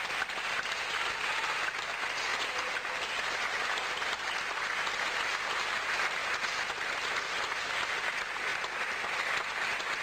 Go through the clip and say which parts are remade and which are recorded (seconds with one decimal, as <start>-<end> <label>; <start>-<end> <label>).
0.0-10.0 recorded